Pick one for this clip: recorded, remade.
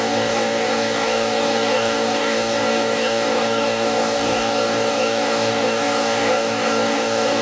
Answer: remade